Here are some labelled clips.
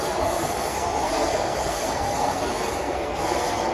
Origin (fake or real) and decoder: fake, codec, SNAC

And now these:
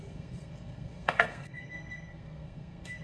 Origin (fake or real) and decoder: fake, codec, SNAC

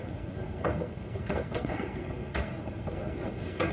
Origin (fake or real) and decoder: fake, codec, SNAC